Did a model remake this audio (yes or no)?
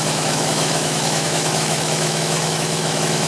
yes